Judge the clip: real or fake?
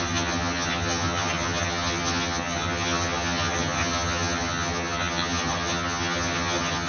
fake